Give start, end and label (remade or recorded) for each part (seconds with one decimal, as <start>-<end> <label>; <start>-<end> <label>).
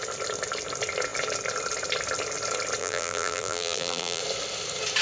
0.0-2.8 recorded; 2.8-4.2 remade; 4.2-5.0 recorded